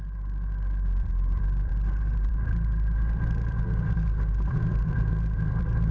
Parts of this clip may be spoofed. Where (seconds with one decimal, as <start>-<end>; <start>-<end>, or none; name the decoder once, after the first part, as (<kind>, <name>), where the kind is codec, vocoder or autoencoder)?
0.0-1.7 (vocoder, BigVGAN v2); 2.3-5.9